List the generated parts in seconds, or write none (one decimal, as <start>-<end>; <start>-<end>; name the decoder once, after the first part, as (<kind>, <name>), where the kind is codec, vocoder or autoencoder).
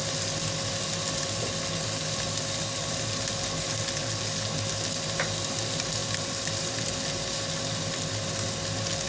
none